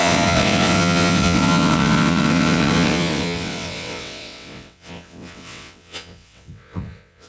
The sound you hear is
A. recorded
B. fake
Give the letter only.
B